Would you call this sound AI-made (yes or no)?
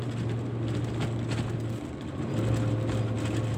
no